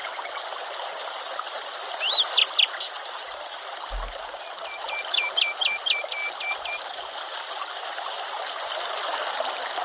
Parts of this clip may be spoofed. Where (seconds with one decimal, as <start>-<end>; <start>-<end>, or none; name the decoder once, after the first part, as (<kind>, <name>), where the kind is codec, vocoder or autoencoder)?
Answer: none